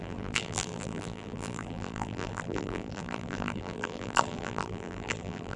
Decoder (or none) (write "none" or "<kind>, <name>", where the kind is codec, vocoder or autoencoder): vocoder, BigVGAN v2